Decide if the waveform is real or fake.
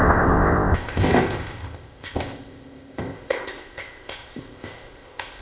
fake